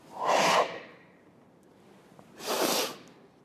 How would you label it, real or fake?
real